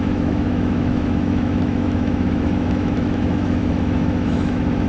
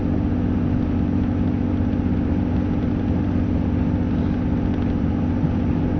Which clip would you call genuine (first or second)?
second